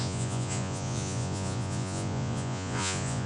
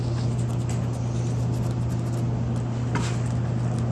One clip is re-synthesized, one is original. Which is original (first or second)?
second